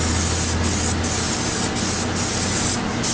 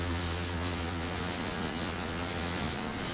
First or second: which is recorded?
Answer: first